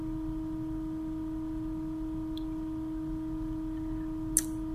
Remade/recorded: recorded